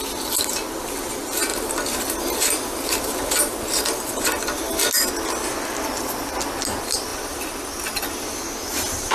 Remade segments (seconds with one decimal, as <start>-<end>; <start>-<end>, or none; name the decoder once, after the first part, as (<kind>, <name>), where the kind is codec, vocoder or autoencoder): none